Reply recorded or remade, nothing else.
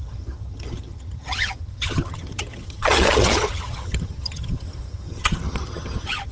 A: remade